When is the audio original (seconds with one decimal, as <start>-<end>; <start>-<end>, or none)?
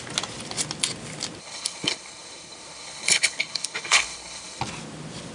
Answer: 0.0-1.4; 4.6-5.3